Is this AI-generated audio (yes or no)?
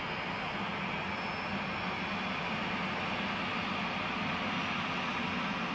no